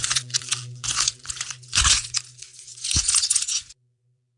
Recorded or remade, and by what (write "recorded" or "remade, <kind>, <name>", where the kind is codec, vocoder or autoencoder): remade, vocoder, Vocos